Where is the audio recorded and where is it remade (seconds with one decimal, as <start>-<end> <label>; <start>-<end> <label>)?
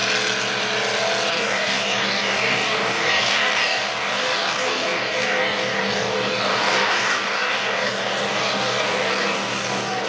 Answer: 0.0-1.3 recorded; 1.3-10.1 remade